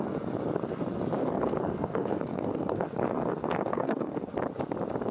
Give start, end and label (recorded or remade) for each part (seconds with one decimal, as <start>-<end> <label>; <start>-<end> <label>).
0.0-1.2 recorded; 1.2-4.3 remade; 4.3-5.1 recorded